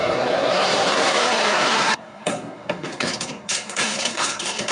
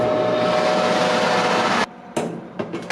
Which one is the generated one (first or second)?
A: first